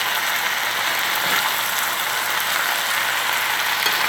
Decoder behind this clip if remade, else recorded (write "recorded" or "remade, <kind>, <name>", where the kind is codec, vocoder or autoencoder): recorded